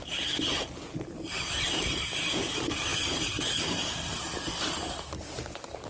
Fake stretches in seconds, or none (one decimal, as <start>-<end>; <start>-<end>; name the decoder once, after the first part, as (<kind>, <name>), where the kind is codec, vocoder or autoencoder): none